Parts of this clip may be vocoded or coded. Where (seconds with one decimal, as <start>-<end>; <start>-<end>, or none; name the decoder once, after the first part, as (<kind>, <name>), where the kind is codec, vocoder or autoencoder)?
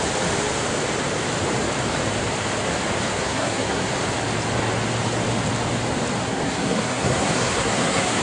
3.1-3.9 (codec, SNAC); 6.2-8.2